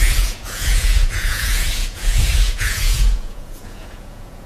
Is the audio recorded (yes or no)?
no